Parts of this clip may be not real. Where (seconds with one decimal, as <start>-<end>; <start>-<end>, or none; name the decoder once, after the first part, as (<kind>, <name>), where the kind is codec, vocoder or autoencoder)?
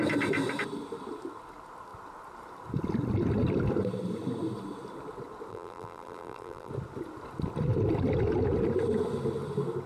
5.5-6.7 (vocoder, BigVGAN v2)